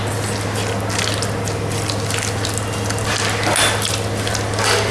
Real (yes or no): yes